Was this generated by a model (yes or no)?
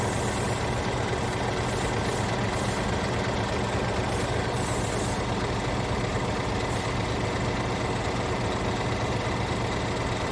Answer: no